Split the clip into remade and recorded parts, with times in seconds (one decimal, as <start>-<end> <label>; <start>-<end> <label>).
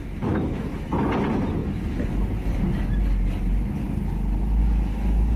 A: 0.0-0.9 remade; 0.9-1.6 recorded; 1.6-2.3 remade; 2.3-4.6 recorded; 4.6-5.4 remade